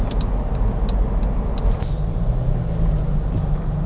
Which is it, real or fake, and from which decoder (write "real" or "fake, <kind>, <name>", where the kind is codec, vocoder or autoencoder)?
real